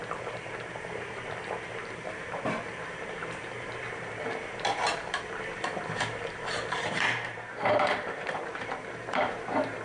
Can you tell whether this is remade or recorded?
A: remade